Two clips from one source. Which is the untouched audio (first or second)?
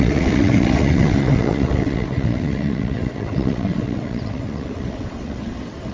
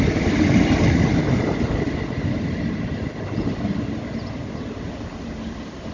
second